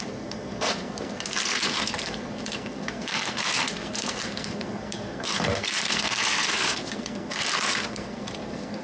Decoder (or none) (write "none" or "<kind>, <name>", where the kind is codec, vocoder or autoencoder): codec, SNAC